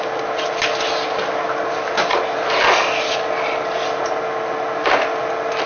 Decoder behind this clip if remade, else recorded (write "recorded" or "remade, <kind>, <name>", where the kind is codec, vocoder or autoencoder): recorded